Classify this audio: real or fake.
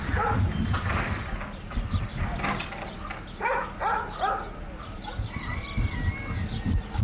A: real